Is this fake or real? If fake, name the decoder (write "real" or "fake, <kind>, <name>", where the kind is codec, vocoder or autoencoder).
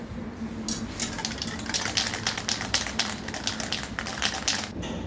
real